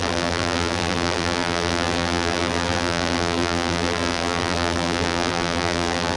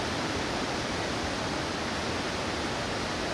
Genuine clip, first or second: second